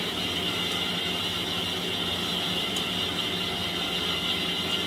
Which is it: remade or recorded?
recorded